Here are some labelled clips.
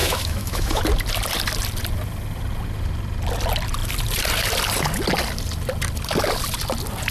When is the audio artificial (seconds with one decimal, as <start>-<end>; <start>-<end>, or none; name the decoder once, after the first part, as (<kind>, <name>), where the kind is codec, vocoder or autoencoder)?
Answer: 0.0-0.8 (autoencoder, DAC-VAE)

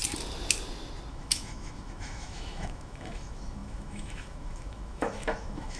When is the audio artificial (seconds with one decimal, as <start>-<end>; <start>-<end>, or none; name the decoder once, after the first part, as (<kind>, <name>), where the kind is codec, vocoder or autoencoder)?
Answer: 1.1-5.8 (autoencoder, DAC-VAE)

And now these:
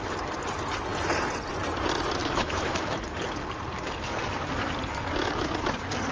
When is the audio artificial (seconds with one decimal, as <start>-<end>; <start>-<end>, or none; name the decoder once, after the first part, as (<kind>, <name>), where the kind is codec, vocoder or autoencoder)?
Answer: 2.2-3.0 (autoencoder, DAC-VAE)

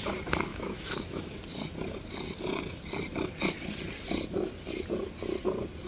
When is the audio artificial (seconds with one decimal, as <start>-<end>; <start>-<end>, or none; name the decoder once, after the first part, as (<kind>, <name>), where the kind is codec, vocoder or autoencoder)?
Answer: 0.5-1.3 (autoencoder, DAC-VAE)

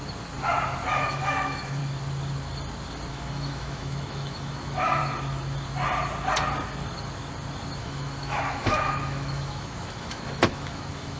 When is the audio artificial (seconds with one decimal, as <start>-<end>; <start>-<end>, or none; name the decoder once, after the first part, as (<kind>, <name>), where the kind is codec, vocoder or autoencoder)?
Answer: 1.1-1.8 (autoencoder, DAC-VAE); 3.1-5.0; 7.8-11.2

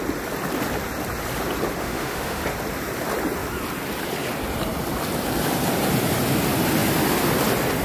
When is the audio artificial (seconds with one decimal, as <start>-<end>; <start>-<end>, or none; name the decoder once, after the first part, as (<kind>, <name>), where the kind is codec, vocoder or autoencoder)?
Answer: 1.8-2.4 (autoencoder, DAC-VAE)